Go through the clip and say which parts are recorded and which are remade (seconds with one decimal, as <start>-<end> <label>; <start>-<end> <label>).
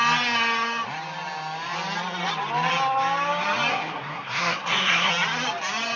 0.0-3.7 recorded; 3.7-5.1 remade; 5.1-6.0 recorded